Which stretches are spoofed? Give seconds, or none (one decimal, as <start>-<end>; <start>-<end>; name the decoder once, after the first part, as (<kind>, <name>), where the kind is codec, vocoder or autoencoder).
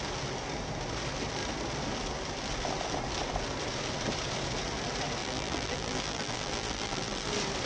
5.2-7.3 (vocoder, BigVGAN v2)